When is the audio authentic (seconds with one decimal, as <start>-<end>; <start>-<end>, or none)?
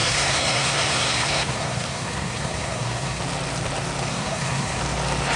3.2-4.1; 4.8-5.4